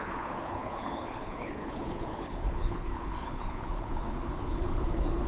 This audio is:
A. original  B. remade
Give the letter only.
B